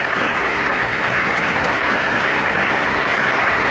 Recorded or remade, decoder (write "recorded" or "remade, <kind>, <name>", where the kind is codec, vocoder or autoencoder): remade, codec, SNAC